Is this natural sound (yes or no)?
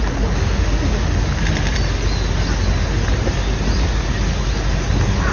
yes